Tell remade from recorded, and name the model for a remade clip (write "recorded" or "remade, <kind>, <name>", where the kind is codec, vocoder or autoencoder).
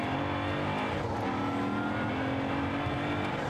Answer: recorded